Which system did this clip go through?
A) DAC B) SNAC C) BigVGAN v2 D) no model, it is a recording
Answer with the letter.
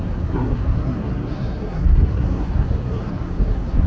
B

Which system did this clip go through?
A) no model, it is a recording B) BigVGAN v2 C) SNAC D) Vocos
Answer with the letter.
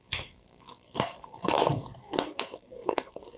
C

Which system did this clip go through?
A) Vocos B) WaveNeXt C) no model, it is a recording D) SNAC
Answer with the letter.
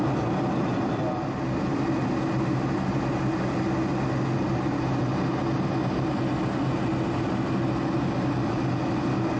C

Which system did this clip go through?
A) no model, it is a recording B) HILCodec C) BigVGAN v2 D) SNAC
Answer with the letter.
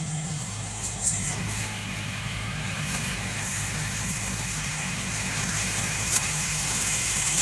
D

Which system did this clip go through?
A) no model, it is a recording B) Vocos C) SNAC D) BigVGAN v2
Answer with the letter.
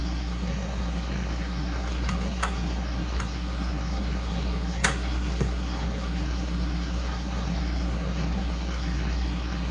C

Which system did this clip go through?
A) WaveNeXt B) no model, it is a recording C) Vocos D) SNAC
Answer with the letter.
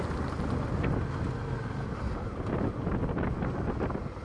B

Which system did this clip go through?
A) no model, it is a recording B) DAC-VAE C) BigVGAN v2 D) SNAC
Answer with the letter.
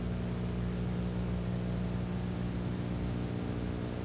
A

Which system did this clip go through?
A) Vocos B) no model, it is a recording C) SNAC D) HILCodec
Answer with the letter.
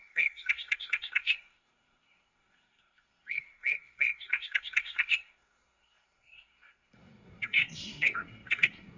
C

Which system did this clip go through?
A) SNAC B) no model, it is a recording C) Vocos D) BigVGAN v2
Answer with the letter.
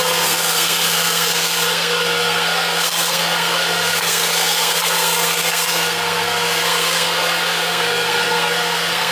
A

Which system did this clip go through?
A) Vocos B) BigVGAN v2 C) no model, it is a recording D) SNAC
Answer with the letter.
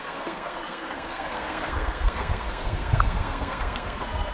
D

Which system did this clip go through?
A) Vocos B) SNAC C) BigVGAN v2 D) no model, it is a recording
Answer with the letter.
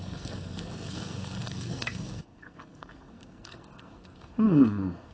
B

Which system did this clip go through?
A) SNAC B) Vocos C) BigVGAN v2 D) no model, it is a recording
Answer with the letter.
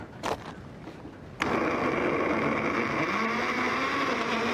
D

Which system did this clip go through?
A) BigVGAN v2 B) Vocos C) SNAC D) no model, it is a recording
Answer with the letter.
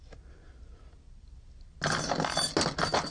D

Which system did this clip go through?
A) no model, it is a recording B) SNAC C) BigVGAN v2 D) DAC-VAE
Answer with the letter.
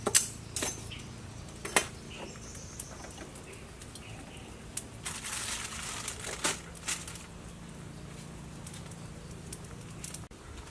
A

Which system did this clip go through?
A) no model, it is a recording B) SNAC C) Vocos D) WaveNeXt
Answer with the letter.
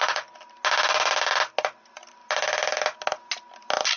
A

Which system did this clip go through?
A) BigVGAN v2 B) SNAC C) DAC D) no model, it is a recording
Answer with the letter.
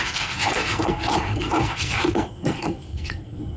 B